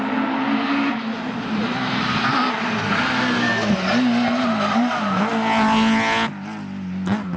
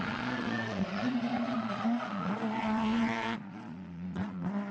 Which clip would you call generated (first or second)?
second